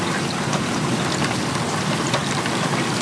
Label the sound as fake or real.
real